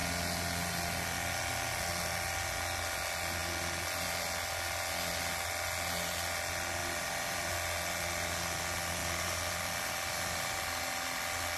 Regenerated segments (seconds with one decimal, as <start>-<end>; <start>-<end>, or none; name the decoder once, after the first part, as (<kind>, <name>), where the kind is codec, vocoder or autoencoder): 6.8-7.5 (vocoder, BigVGAN v2); 9.0-10.8